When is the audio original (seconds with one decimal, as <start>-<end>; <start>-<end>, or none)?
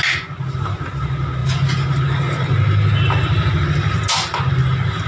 0.0-5.1